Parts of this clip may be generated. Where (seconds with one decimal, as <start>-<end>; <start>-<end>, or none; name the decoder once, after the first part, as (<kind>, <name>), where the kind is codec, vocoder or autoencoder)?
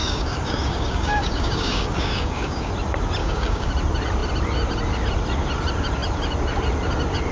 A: 0.0-2.7 (codec, DAC); 3.2-3.7